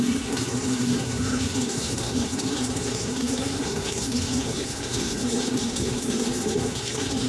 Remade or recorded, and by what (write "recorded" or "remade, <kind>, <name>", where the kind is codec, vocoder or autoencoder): remade, codec, SNAC